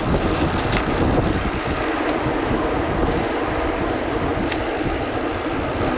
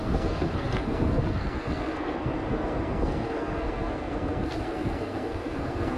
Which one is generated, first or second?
second